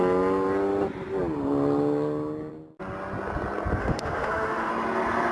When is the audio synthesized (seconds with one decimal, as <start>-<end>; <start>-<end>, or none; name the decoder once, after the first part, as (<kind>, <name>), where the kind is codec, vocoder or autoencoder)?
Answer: 3.8-4.7 (autoencoder, DAC-VAE)